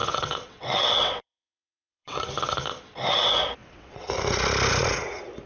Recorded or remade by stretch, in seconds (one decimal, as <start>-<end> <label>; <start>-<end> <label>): 0.0-2.3 remade; 2.3-3.6 recorded; 3.6-4.1 remade; 4.1-5.5 recorded

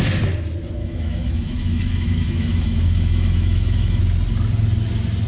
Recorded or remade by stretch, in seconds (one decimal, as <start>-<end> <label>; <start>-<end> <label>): 0.0-0.8 recorded; 0.8-4.0 remade; 4.0-5.3 recorded

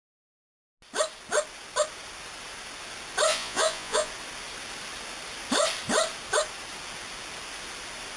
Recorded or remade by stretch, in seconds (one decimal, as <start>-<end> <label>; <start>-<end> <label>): 0.0-3.3 recorded; 3.3-4.1 remade; 4.1-8.2 recorded